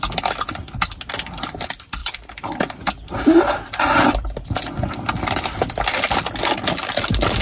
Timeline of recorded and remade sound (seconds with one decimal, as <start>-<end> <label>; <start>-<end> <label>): 0.0-7.4 recorded